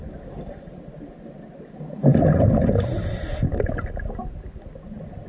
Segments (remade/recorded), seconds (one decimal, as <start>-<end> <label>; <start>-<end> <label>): 0.0-5.3 recorded